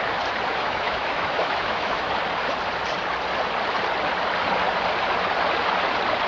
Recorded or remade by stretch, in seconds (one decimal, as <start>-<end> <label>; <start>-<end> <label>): 0.0-0.5 recorded; 0.5-2.1 remade; 2.1-6.3 recorded